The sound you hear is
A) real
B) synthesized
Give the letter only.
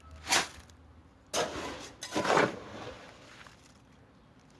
A